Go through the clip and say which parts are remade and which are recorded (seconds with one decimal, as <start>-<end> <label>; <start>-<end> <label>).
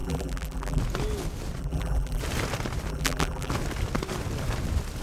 0.0-0.8 remade; 0.8-1.6 recorded; 1.6-2.2 remade; 2.2-2.9 recorded; 2.9-3.5 remade; 3.5-5.0 recorded